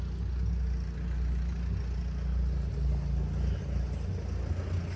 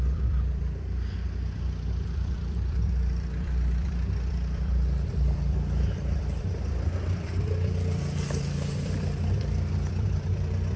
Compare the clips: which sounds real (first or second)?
first